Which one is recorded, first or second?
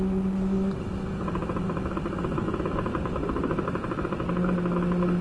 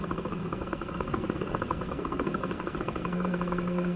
first